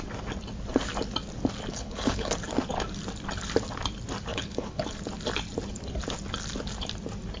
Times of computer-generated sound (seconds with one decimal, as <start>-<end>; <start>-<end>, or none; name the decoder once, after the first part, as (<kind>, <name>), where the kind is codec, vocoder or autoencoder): 1.7-2.3 (codec, HILCodec); 4.3-5.0